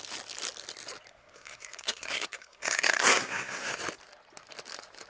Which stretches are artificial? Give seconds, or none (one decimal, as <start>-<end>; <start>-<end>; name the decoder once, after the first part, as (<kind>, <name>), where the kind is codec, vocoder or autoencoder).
1.1-3.7 (codec, SNAC)